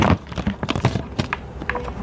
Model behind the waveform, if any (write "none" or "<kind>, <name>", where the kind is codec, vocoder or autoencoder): none